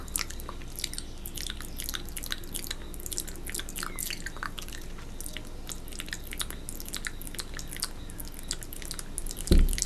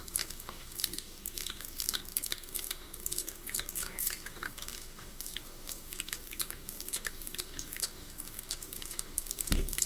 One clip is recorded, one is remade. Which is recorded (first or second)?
first